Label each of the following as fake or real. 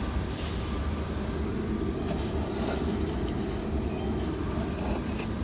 real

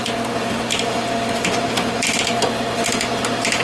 real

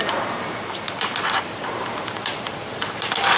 fake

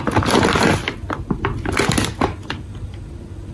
real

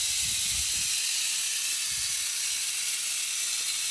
real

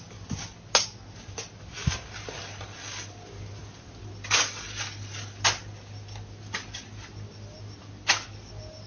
real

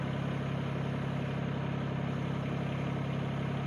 real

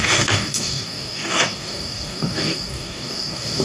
fake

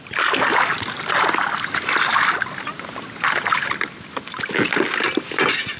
real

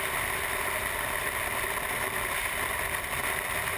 real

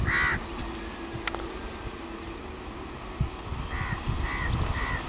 real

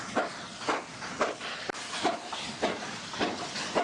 real